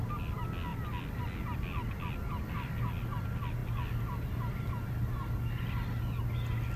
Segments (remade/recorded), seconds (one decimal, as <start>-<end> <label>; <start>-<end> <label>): 0.0-6.8 recorded